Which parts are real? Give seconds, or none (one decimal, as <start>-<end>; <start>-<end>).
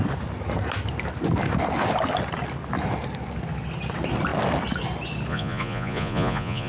0.0-5.3